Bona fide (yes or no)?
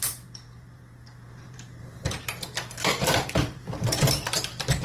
no